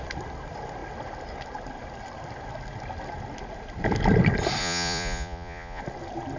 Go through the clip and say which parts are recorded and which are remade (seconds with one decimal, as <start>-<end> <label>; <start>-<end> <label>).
0.0-4.6 recorded; 4.6-5.8 remade; 5.8-6.4 recorded